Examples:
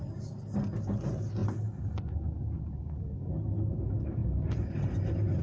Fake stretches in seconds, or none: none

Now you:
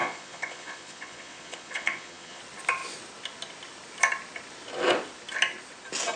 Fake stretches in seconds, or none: 0.0-2.4 (vocoder, Vocos)

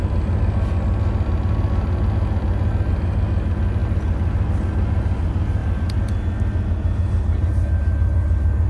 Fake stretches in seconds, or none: none

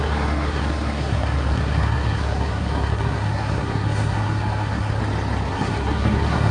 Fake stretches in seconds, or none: 0.0-5.0 (codec, SNAC); 5.5-6.5

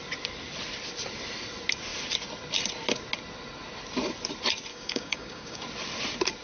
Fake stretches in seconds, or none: 4.7-5.6 (codec, DAC)

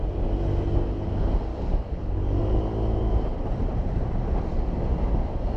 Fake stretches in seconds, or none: 1.5-2.4 (codec, DAC)

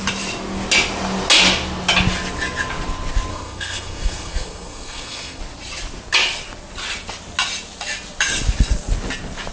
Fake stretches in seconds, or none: 3.3-5.4 (codec, SNAC)

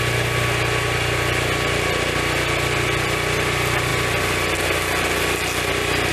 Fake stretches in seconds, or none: none